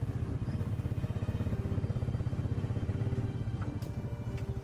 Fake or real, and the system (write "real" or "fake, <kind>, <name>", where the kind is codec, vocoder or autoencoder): real